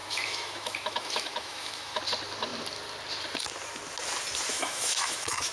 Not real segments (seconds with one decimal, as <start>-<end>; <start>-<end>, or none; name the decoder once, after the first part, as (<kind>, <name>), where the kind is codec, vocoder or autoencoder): 0.0-2.0 (autoencoder, DAC-VAE); 4.5-5.5